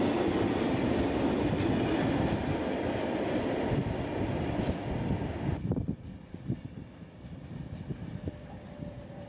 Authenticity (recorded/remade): recorded